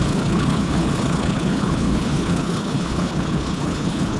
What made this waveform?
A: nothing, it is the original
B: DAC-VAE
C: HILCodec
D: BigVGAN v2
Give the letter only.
C